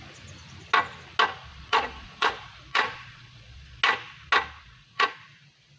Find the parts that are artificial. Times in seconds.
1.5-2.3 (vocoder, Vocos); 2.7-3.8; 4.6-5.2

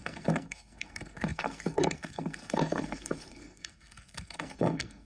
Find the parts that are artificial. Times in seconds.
0.0-5.0 (codec, SNAC)

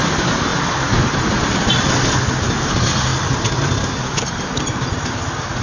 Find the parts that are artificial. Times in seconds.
0.5-1.8 (vocoder, BigVGAN v2)